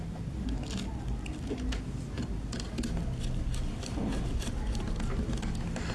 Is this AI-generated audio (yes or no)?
no